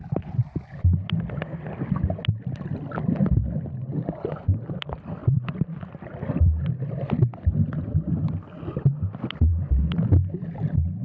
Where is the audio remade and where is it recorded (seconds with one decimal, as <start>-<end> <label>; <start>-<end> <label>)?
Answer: 0.0-11.0 recorded